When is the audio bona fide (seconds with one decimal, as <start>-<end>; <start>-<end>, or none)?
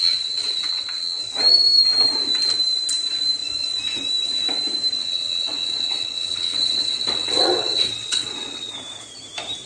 1.2-5.0; 8.7-9.7